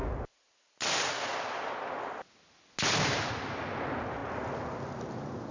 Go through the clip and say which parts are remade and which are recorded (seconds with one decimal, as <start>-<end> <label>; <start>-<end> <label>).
0.0-5.5 recorded